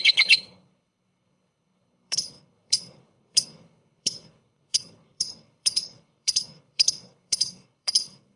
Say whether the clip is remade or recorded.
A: remade